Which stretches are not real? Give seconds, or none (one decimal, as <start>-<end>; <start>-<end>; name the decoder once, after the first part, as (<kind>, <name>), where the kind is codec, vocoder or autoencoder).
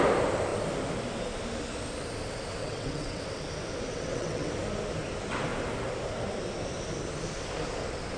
2.6-3.2 (vocoder, WaveNeXt); 3.9-4.5